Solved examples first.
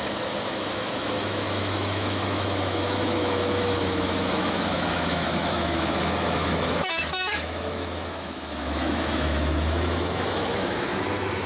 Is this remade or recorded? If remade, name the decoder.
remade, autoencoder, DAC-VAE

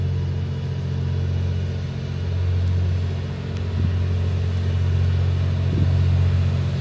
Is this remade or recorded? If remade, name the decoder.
recorded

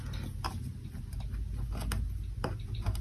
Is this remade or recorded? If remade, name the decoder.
recorded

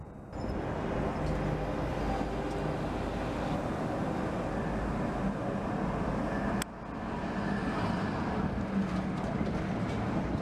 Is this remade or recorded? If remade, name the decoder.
recorded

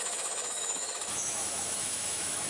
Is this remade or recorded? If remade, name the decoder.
remade, autoencoder, DAC-VAE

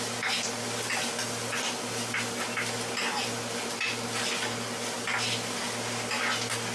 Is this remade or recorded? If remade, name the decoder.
recorded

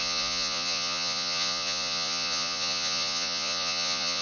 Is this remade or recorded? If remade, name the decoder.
remade, vocoder, Vocos